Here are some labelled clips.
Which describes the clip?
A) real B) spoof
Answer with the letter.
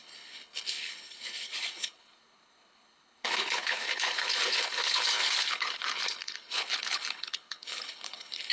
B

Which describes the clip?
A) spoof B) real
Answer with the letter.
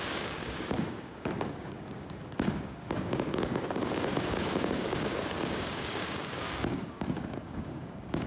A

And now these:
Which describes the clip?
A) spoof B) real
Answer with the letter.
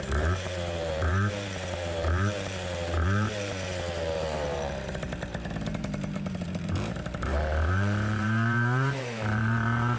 A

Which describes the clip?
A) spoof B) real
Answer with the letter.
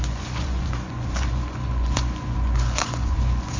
A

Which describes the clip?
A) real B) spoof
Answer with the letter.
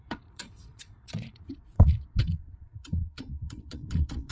B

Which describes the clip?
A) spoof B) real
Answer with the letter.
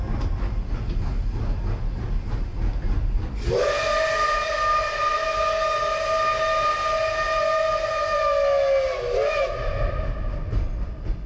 B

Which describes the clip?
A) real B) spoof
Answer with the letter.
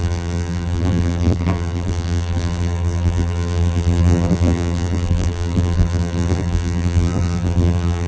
B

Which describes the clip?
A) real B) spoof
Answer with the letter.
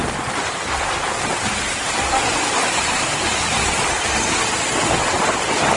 A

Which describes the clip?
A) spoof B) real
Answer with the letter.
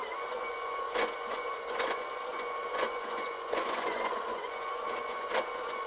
A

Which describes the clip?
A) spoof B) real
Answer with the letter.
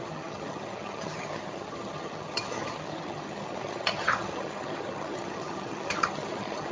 A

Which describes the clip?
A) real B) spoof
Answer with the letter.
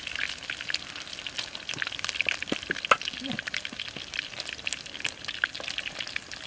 A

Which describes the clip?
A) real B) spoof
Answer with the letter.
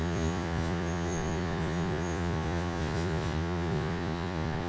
B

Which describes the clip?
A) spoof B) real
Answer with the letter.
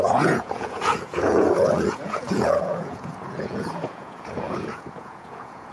A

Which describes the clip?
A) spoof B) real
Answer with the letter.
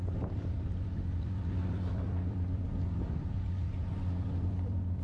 A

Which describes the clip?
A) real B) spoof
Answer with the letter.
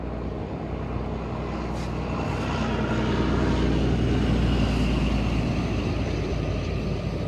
A